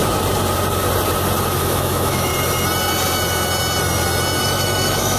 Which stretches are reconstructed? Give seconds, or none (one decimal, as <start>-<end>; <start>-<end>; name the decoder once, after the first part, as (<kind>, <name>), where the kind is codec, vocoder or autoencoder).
1.6-2.3 (autoencoder, DAC-VAE); 4.4-5.2